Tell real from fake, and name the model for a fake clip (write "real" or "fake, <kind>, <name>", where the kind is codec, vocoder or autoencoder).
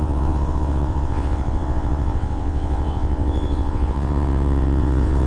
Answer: fake, vocoder, WaveNeXt